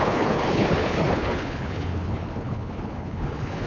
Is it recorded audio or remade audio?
remade